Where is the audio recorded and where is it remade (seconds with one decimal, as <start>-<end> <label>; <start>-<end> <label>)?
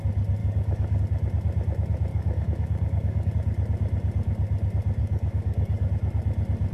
0.0-0.4 recorded; 0.4-1.0 remade; 1.0-2.1 recorded; 2.1-3.3 remade; 3.3-5.0 recorded; 5.0-5.9 remade; 5.9-6.7 recorded